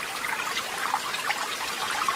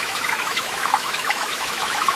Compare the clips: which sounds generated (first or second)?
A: second